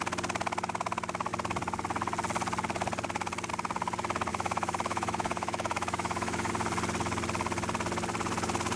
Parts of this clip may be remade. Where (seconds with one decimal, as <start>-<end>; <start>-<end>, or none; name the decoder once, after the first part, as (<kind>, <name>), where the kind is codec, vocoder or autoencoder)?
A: 4.3-6.5 (autoencoder, DAC-VAE)